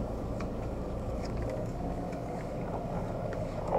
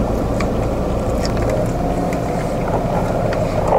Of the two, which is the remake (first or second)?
first